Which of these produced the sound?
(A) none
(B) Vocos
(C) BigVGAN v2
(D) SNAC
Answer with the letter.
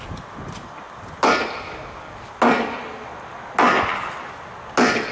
A